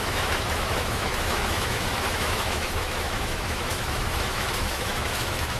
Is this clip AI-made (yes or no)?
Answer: yes